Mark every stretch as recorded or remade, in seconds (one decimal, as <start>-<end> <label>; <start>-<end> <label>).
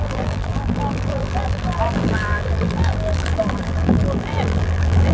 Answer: 0.0-5.1 remade